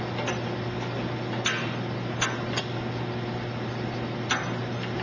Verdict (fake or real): real